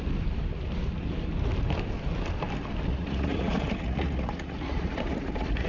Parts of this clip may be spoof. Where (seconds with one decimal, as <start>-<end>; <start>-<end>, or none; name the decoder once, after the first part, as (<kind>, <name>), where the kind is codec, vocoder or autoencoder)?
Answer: 2.9-5.7 (vocoder, Vocos)